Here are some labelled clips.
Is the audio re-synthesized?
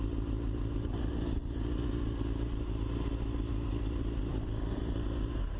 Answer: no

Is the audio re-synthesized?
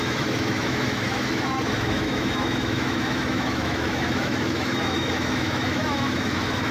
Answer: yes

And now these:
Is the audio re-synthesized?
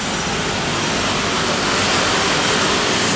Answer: no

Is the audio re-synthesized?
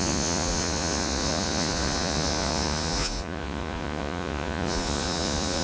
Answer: yes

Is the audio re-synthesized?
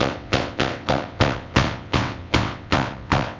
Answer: yes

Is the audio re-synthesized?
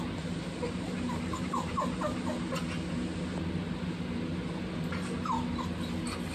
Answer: no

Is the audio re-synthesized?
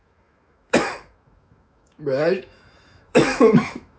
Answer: yes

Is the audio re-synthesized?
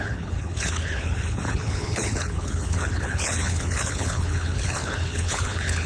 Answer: yes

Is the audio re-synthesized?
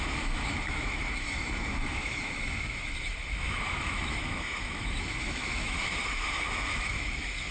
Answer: yes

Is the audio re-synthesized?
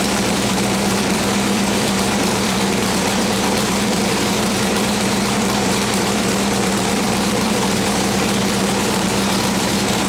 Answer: yes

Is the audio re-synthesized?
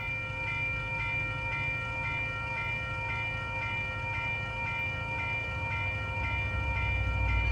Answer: no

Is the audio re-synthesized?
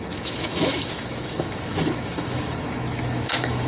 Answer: yes